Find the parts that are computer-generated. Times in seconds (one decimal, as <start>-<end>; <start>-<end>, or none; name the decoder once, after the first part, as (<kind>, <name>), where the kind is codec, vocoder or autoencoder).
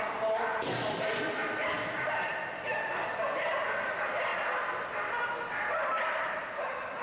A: none